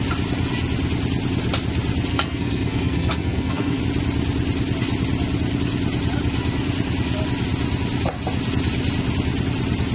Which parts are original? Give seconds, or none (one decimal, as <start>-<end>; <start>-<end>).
0.0-2.1; 3.8-9.9